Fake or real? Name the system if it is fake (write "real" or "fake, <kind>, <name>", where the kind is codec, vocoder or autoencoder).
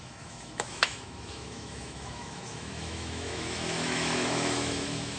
fake, autoencoder, DAC-VAE